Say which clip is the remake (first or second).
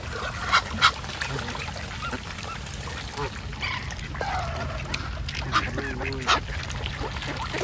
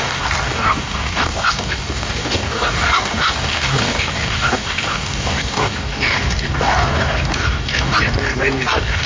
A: second